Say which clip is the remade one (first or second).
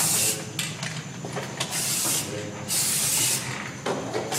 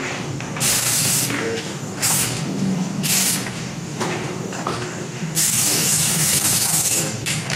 second